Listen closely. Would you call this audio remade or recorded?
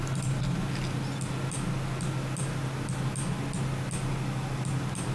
recorded